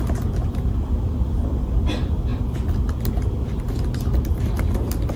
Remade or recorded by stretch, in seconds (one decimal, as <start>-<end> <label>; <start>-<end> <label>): 0.0-5.2 recorded